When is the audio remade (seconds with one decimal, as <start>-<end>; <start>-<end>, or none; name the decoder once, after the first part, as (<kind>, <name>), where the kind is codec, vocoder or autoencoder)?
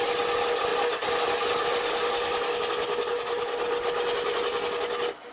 none